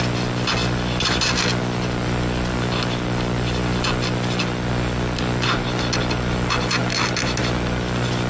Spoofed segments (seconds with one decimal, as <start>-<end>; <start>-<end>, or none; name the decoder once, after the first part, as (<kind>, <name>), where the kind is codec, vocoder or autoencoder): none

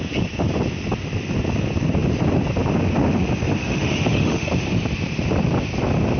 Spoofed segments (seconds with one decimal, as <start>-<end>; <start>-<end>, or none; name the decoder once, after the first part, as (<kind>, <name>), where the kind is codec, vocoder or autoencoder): 3.6-4.5 (autoencoder, DAC-VAE)

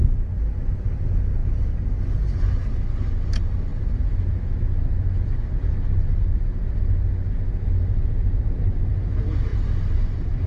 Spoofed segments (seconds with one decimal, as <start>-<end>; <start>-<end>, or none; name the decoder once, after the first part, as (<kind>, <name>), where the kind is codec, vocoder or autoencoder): 9.5-10.0 (vocoder, BigVGAN v2)